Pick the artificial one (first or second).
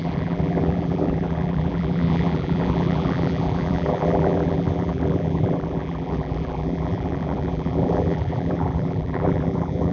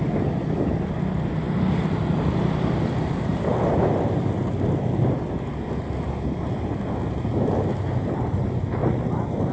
first